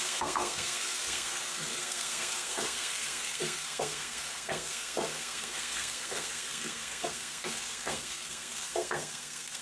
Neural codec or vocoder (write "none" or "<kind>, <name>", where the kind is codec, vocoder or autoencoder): codec, SNAC